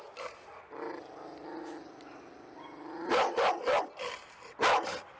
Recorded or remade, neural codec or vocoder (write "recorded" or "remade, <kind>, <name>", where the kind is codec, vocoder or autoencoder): recorded